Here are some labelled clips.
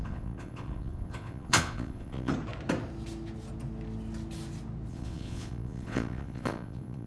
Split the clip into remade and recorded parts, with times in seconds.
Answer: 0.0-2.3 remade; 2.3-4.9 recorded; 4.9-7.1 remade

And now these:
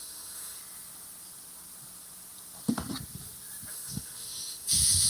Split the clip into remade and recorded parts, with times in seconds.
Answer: 0.0-0.6 remade; 0.6-3.7 recorded; 3.7-5.1 remade

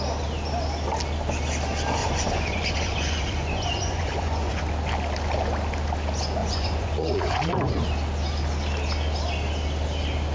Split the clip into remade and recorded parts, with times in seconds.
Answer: 0.0-2.0 recorded; 2.0-4.6 remade; 4.6-6.4 recorded; 6.4-7.5 remade; 7.5-10.3 recorded

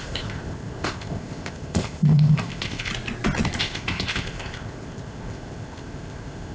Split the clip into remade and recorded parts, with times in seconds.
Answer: 0.0-2.9 remade; 2.9-3.6 recorded; 3.6-6.5 remade

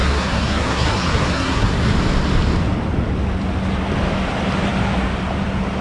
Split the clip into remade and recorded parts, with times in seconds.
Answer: 0.0-1.9 remade; 1.9-5.8 recorded

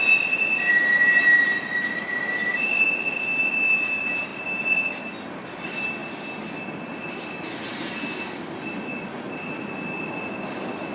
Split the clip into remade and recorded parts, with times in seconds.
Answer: 0.0-10.9 recorded